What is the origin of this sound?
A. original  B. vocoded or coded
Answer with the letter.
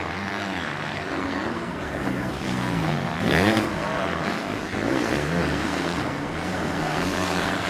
B